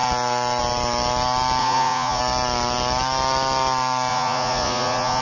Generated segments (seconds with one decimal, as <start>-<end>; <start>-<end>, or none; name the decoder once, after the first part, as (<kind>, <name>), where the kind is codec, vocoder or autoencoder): 1.6-2.2 (vocoder, Vocos); 4.1-5.2